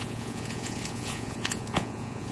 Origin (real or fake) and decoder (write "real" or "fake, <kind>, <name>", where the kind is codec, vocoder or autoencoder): fake, vocoder, Vocos